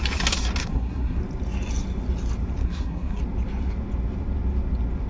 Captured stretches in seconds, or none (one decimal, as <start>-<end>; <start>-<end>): 0.0-0.6; 1.2-2.6; 3.2-5.1